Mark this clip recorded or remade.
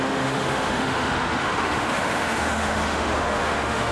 remade